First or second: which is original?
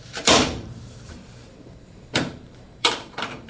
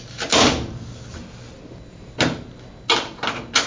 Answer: second